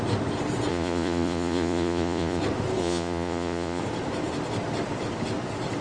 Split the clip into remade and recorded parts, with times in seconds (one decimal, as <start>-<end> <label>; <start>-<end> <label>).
0.0-0.7 recorded; 0.7-2.4 remade; 2.4-2.8 recorded; 2.8-3.8 remade; 3.8-5.8 recorded